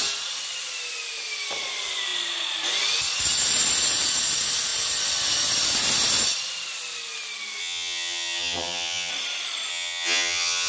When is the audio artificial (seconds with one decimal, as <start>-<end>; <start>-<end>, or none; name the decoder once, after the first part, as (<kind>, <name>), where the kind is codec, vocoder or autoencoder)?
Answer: 7.6-9.1 (vocoder, HiFi-GAN); 9.7-10.7